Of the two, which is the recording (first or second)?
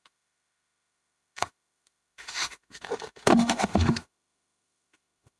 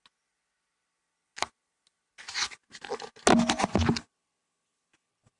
second